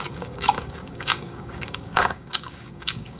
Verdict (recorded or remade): remade